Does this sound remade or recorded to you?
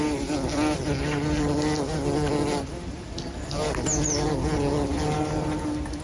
recorded